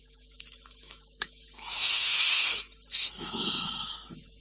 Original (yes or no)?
no